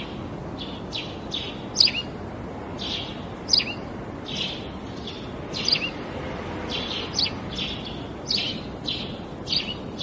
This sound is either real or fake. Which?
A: real